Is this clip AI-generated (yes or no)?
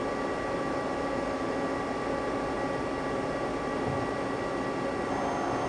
no